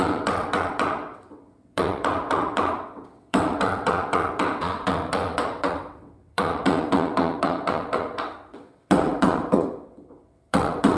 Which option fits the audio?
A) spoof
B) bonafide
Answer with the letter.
A